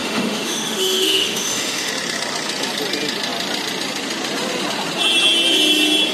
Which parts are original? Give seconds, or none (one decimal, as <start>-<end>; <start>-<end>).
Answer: 1.9-6.1